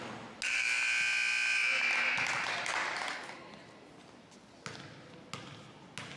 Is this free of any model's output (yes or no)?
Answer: yes